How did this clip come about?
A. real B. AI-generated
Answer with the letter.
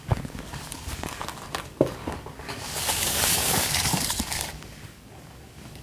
B